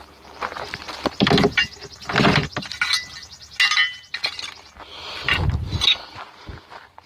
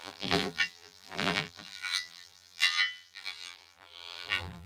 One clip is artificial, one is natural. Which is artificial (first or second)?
second